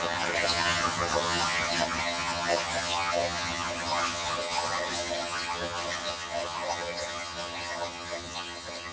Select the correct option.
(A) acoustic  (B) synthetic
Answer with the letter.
B